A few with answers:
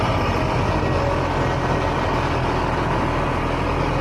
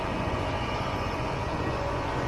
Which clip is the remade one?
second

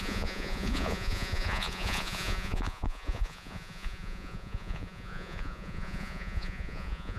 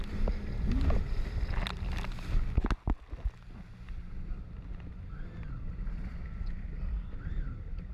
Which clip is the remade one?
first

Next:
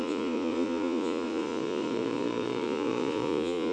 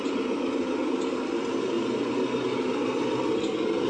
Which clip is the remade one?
first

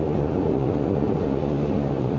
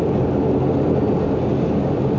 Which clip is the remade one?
first